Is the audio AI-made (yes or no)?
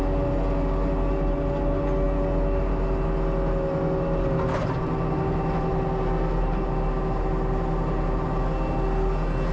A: no